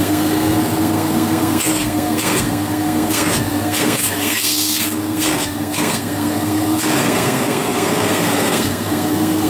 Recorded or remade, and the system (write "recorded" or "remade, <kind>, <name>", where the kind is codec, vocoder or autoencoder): remade, codec, SNAC